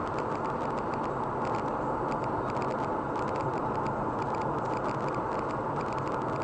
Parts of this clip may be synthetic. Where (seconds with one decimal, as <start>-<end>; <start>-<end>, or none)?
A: none